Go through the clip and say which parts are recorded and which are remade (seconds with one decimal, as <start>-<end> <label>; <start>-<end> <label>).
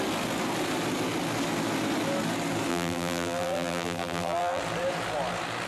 0.0-2.7 recorded; 2.7-4.6 remade; 4.6-5.7 recorded